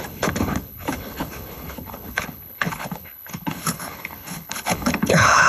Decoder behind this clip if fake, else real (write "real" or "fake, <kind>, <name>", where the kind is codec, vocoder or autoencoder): fake, codec, HILCodec